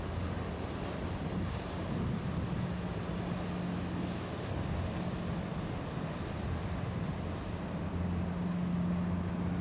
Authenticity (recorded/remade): recorded